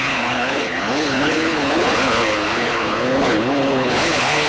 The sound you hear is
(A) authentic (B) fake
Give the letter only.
B